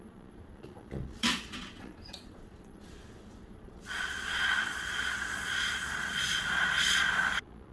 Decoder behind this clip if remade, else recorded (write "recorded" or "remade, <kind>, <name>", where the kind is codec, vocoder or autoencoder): remade, vocoder, Vocos